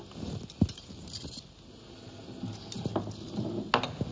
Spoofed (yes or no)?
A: no